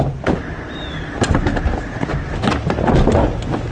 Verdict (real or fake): real